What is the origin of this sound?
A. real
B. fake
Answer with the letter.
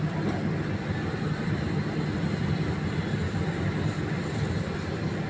A